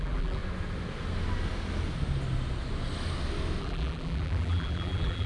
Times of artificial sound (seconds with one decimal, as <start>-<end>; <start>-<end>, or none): 0.0-0.4; 3.6-5.3